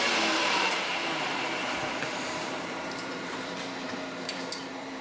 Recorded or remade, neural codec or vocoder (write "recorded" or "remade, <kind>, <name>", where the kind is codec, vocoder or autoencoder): remade, vocoder, BigVGAN v2